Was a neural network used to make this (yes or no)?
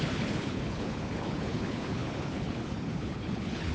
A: yes